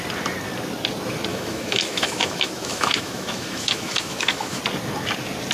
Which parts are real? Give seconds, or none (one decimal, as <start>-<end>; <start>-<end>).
0.0-1.3; 4.6-5.5